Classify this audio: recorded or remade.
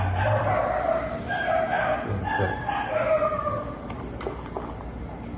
recorded